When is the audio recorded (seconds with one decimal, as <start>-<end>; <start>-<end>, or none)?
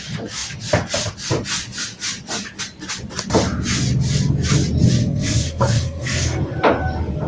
0.0-5.0; 6.4-7.3